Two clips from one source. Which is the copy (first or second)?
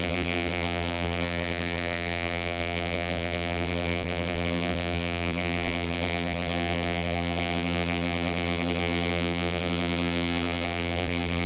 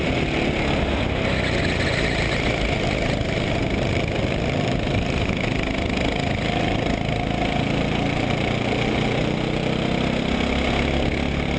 first